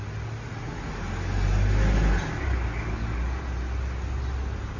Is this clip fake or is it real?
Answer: real